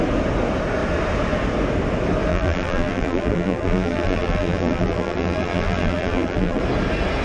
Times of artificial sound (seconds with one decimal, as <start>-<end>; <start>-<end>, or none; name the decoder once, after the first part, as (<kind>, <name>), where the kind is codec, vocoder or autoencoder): 2.3-6.6 (vocoder, BigVGAN v2)